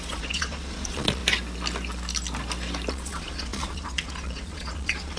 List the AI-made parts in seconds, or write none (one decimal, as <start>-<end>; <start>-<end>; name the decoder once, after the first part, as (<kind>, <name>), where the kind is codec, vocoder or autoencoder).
0.0-1.2 (vocoder, Vocos); 2.9-5.2